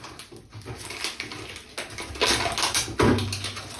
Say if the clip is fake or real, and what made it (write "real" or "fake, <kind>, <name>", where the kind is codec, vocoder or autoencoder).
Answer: real